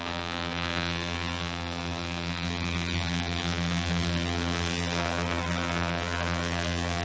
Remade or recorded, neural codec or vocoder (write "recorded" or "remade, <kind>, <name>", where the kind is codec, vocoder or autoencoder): remade, vocoder, BigVGAN v2